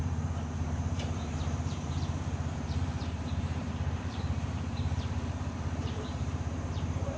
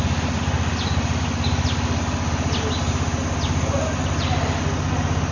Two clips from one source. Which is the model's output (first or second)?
first